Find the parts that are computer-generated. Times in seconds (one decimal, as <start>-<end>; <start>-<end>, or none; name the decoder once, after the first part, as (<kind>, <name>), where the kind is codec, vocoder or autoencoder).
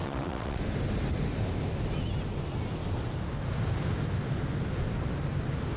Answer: 0.0-0.6 (vocoder, WaveNeXt)